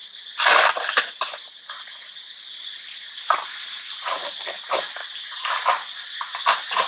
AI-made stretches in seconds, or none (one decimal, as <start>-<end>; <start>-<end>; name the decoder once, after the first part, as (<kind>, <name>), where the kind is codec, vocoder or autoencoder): 0.8-6.9 (vocoder, BigVGAN v2)